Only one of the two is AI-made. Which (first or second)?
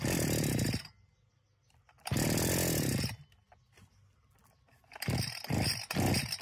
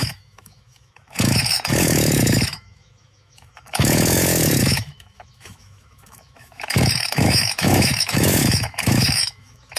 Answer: second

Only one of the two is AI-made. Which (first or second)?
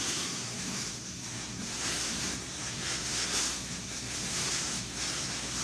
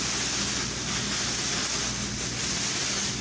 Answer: first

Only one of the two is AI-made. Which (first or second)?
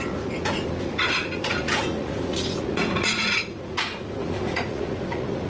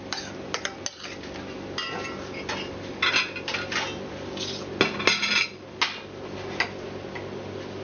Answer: first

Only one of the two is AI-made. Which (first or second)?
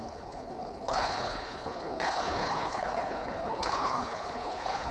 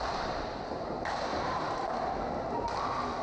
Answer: first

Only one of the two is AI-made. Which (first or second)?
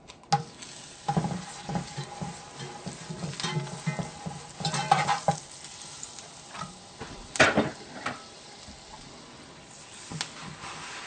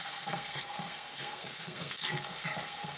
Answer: second